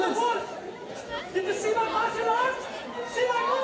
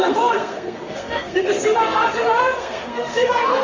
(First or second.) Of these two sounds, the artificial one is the second